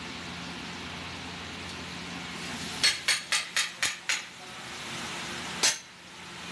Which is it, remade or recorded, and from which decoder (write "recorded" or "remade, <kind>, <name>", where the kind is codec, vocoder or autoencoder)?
recorded